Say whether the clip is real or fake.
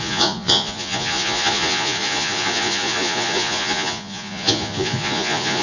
fake